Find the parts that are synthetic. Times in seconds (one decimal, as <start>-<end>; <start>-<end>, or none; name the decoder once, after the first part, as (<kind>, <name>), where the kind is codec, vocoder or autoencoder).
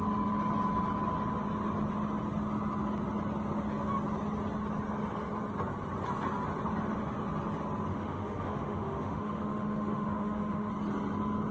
7.9-10.7 (autoencoder, DAC-VAE)